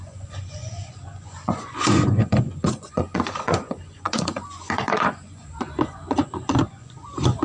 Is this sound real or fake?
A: fake